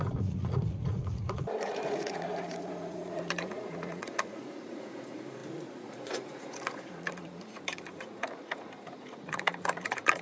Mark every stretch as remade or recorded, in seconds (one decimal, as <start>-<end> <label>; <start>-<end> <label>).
0.0-10.2 remade